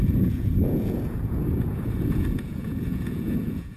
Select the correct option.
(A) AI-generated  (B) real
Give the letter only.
A